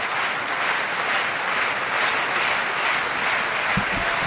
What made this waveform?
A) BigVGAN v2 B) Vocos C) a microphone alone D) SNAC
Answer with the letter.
C